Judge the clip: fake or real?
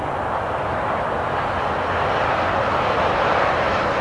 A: real